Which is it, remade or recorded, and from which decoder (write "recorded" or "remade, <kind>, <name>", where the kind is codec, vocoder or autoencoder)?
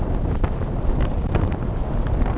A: recorded